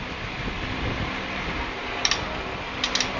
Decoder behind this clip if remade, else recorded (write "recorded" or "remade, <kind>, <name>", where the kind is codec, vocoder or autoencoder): recorded